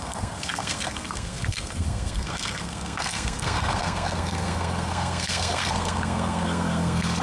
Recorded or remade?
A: remade